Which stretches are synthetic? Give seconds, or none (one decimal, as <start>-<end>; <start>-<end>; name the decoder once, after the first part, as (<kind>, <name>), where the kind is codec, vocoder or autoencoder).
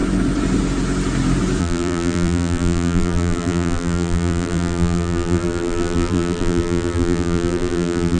1.6-8.2 (vocoder, BigVGAN v2)